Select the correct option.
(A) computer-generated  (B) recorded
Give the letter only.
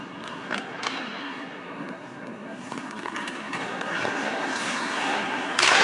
A